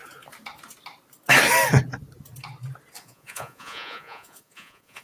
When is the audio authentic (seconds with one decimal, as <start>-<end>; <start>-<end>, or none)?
0.0-3.0